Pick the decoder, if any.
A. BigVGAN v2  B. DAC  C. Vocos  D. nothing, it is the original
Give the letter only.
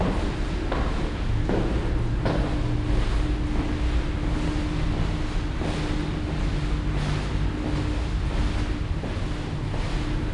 D